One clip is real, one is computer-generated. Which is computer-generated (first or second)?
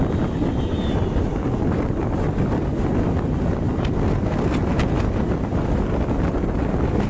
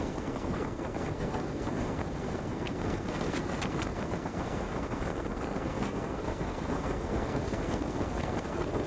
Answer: second